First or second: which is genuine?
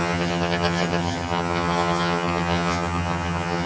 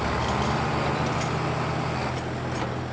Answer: second